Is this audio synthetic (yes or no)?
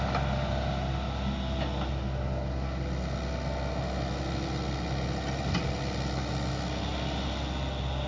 no